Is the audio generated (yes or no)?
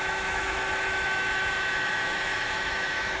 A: yes